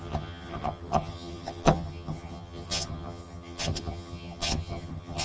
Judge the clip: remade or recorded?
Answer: remade